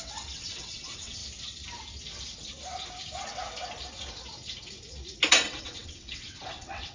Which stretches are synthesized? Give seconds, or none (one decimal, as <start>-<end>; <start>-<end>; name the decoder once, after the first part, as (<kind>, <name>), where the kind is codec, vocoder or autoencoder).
0.0-1.2 (vocoder, WaveNeXt); 5.3-6.9